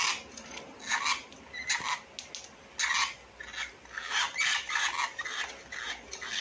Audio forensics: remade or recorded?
recorded